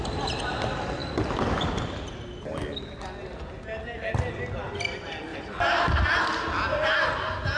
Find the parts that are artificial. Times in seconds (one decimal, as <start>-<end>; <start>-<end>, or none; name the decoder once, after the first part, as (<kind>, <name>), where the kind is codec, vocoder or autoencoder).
5.3-6.2 (vocoder, BigVGAN v2)